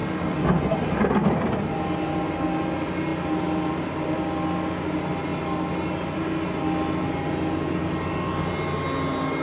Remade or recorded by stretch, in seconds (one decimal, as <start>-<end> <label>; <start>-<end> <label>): 0.0-9.4 recorded